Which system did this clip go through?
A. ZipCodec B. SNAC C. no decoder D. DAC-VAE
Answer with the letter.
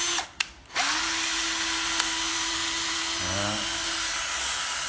C